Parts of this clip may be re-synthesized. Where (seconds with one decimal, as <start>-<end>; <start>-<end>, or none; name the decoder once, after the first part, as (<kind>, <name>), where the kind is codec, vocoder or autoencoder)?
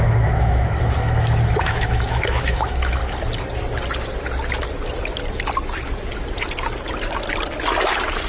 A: 0.0-3.0 (autoencoder, DAC-VAE)